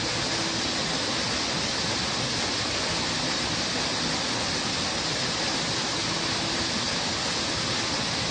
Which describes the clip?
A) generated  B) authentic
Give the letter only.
B